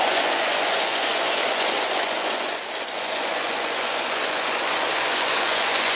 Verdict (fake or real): fake